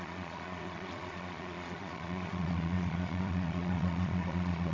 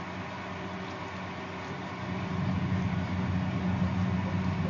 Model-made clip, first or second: first